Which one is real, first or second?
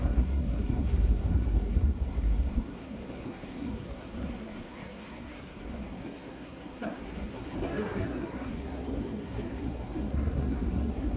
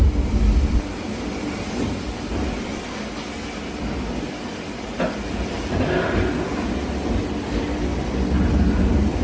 second